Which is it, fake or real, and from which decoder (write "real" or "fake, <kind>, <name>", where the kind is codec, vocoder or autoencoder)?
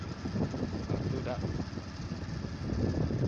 real